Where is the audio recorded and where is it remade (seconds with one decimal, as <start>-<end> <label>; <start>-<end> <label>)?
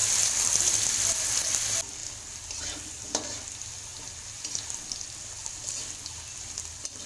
0.0-7.1 recorded